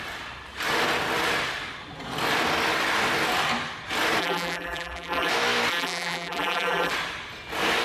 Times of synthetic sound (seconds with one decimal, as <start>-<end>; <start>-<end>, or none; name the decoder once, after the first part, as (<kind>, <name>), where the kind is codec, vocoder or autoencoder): 4.2-5.3 (vocoder, BigVGAN v2); 5.7-6.9